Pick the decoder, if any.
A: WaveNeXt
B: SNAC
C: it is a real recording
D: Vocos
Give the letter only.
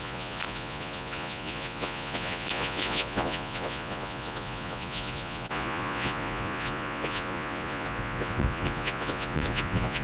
D